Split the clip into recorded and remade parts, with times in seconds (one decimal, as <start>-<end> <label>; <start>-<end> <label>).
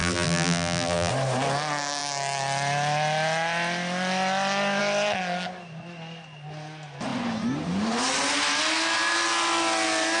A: 0.0-1.1 remade; 1.1-10.2 recorded